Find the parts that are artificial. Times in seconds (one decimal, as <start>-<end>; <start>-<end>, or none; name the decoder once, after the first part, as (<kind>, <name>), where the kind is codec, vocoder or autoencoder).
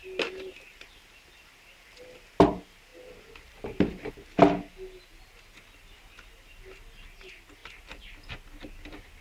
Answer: none